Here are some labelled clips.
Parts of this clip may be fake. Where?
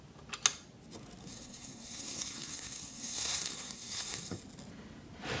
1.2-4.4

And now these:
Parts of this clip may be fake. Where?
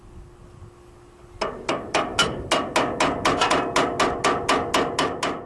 none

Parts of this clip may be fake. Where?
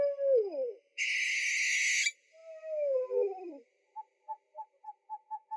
none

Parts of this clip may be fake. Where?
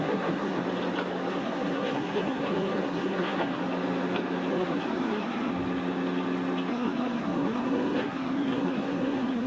0.0-0.6; 1.3-3.6; 4.5-5.5; 6.7-9.5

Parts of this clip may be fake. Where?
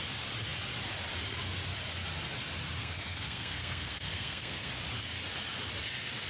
2.8-4.7